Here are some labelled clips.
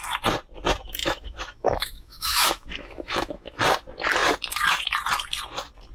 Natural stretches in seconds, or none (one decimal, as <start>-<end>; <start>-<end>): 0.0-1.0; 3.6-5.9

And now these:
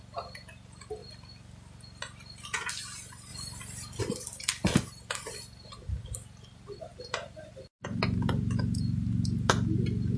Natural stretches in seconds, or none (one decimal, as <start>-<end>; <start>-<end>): 0.0-10.2

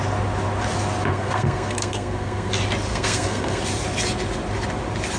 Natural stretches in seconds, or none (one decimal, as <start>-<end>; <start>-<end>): 0.0-1.1; 2.5-2.9; 3.6-5.2

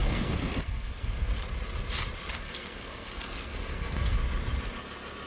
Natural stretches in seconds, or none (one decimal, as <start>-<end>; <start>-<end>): 1.3-2.3; 4.2-5.3

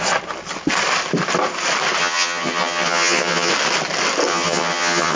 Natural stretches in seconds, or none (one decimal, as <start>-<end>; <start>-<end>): 0.0-2.0; 3.5-4.3